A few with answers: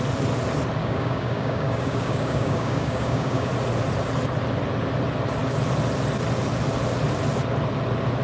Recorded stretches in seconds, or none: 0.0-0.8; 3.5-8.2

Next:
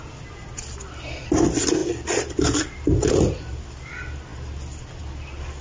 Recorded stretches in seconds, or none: 0.0-5.6

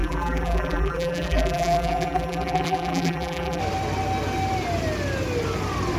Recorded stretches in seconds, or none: 3.6-6.0

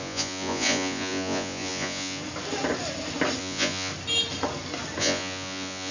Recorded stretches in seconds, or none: 2.2-3.4; 3.9-5.0

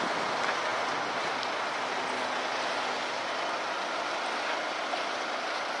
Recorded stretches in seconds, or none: 0.0-5.8

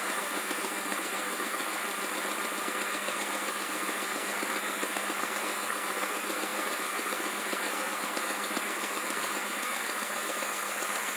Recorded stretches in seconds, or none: 1.8-2.6

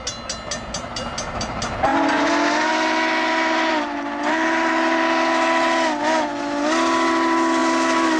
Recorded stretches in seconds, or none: 0.0-3.7; 4.7-8.2

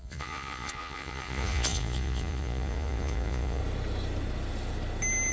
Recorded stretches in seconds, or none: 3.6-5.3